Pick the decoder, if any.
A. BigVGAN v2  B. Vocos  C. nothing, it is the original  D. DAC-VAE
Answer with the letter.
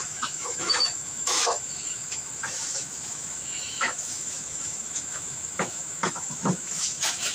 D